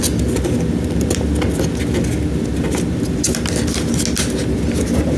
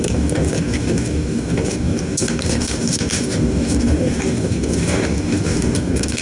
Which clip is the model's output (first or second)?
second